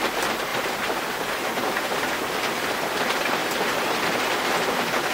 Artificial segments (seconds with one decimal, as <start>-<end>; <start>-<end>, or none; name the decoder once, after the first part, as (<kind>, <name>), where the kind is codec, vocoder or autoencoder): 0.5-2.9 (vocoder, BigVGAN v2); 3.4-4.2

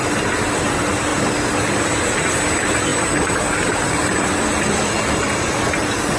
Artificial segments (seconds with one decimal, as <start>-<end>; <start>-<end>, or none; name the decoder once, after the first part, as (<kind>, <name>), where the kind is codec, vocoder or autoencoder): 2.9-3.4 (vocoder, BigVGAN v2)

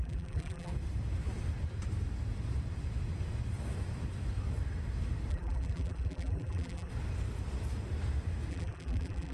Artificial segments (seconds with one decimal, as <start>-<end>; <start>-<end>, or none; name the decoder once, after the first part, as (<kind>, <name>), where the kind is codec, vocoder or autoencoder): 0.0-0.7 (vocoder, BigVGAN v2); 5.3-6.9; 8.5-9.3